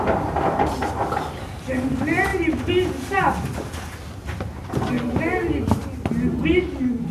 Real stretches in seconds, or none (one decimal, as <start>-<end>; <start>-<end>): 0.0-7.1